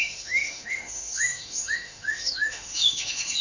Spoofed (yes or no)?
yes